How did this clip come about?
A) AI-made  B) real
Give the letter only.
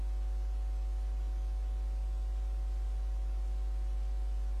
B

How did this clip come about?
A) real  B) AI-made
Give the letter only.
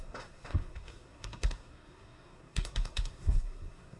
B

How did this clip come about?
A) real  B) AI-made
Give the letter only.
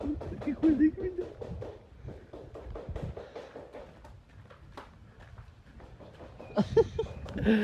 B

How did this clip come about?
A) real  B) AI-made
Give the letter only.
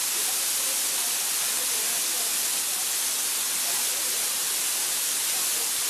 A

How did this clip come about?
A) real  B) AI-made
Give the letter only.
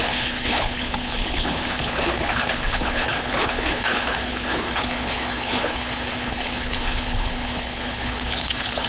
B